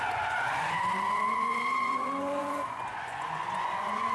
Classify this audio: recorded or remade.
remade